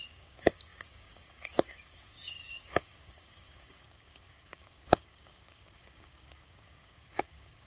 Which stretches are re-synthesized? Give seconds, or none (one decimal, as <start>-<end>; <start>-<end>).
0.0-7.7

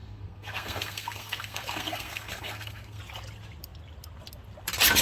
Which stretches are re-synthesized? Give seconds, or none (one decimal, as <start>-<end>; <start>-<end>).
0.0-3.0

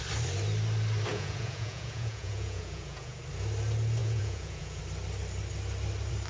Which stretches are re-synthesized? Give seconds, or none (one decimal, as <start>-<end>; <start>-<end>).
1.1-3.2; 4.0-4.8

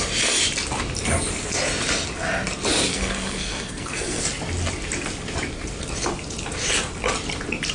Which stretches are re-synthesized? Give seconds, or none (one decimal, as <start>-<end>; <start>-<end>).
2.9-4.2

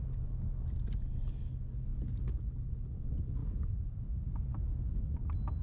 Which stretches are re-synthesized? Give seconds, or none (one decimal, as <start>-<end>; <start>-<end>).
3.4-4.6

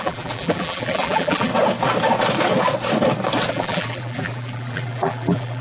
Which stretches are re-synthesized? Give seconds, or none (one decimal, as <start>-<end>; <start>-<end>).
0.0-1.5; 3.5-5.6

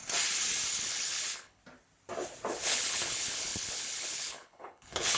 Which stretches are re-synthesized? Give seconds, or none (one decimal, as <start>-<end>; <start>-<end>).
0.7-1.6; 2.5-5.2